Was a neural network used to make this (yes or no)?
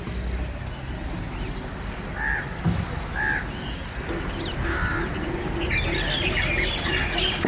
no